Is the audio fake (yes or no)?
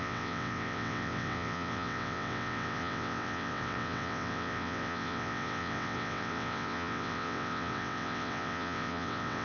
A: yes